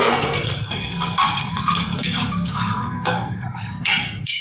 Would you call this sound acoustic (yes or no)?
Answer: no